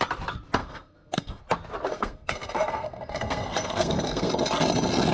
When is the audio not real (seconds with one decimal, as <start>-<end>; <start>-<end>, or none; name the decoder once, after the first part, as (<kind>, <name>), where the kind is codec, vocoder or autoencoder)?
0.6-1.4 (codec, SNAC); 1.9-4.3